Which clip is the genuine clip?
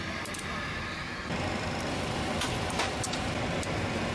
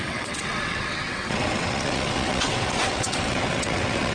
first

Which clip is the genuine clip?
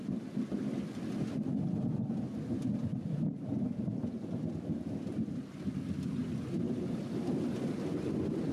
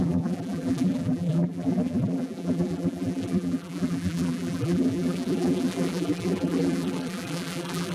first